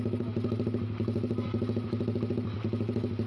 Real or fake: real